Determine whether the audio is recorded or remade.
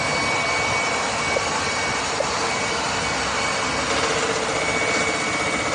recorded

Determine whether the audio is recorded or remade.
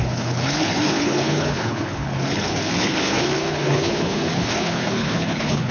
remade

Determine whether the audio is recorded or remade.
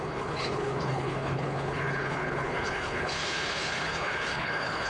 remade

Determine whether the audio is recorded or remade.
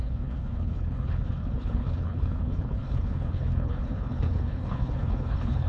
remade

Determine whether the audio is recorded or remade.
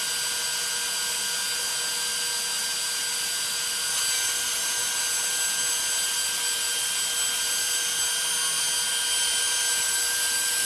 recorded